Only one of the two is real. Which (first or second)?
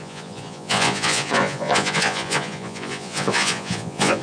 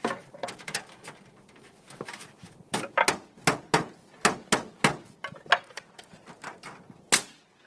second